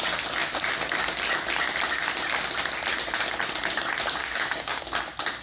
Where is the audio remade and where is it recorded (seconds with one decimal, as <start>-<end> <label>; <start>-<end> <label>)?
0.0-4.2 recorded; 4.2-4.8 remade; 4.8-5.4 recorded